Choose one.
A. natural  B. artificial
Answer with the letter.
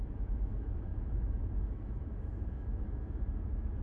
B